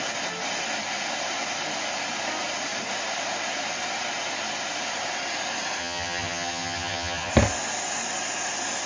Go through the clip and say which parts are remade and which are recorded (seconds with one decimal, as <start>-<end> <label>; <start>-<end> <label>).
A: 0.0-5.8 recorded; 5.8-7.3 remade; 7.3-8.9 recorded